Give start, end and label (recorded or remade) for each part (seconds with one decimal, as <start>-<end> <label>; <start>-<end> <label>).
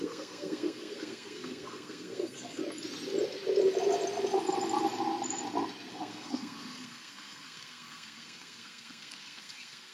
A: 0.0-2.6 remade; 2.6-5.9 recorded; 5.9-9.9 remade